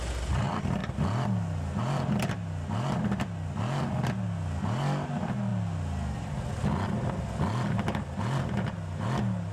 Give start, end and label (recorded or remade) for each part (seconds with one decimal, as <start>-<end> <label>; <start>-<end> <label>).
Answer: 0.0-9.5 recorded